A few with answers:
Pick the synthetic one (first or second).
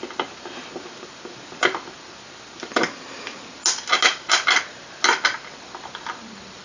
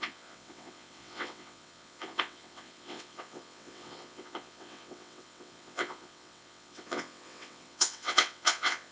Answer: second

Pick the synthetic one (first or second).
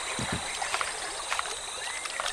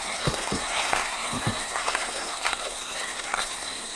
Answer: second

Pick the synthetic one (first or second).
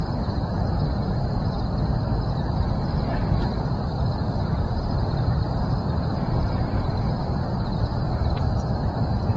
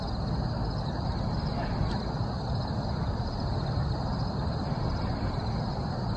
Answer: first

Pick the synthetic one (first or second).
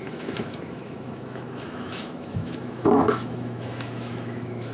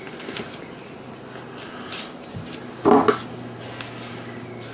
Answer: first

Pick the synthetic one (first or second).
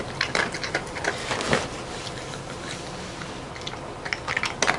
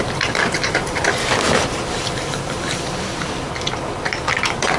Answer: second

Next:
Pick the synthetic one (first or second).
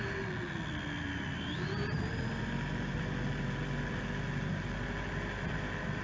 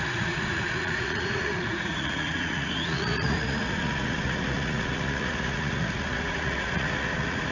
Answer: second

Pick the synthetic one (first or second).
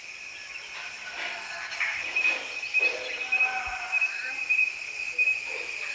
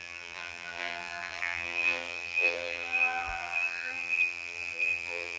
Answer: second